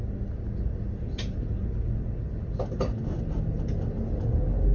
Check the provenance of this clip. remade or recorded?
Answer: recorded